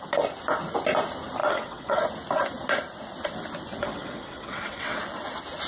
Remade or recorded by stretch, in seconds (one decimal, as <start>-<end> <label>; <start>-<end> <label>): 0.0-1.4 recorded; 1.4-2.0 remade; 2.0-3.8 recorded; 3.8-5.0 remade; 5.0-5.7 recorded